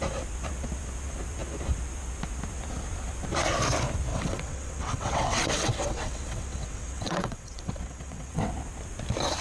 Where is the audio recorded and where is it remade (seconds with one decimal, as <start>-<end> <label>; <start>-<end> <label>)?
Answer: 0.0-4.1 recorded; 4.1-8.5 remade; 8.5-9.4 recorded